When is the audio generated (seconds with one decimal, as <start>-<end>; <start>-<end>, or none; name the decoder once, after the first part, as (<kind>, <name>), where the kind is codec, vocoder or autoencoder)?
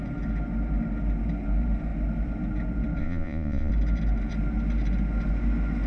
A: 3.0-3.7 (vocoder, Vocos)